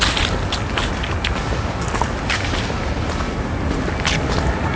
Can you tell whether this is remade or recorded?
recorded